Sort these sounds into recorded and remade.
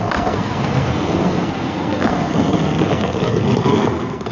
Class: remade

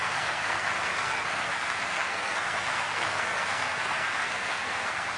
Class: remade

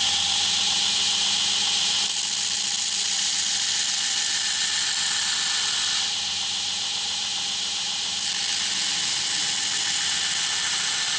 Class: recorded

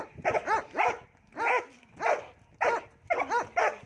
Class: recorded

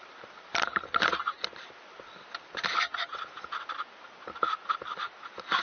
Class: recorded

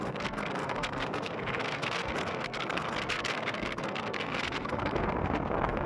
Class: remade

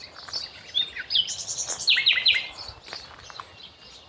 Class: recorded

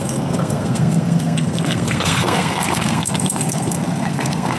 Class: remade